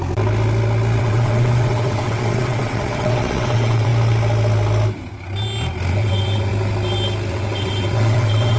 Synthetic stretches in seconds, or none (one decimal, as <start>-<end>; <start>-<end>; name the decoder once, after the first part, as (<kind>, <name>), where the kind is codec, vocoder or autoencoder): 1.0-3.9 (vocoder, WaveNeXt); 5.9-6.5; 7.3-8.6

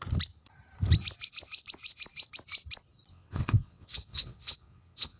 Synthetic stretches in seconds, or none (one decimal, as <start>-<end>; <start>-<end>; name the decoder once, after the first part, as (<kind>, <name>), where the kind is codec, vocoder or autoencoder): 3.1-5.2 (vocoder, WaveNeXt)